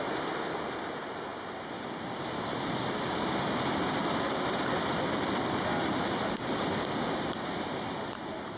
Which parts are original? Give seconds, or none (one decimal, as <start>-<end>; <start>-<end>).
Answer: 0.0-8.6